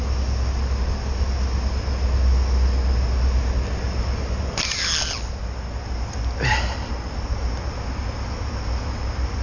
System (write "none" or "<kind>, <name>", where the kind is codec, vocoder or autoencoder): none